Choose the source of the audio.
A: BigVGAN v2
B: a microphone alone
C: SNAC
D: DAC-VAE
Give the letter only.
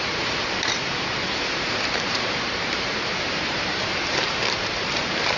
A